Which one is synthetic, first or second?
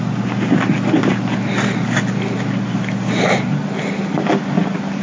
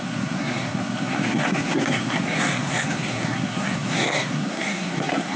second